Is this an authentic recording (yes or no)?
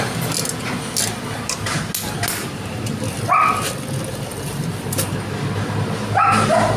yes